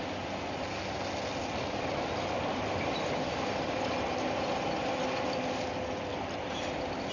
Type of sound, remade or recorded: recorded